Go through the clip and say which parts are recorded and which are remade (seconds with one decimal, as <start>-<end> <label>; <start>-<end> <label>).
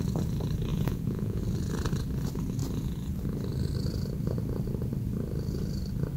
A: 0.0-0.7 recorded; 0.7-1.4 remade; 1.4-6.2 recorded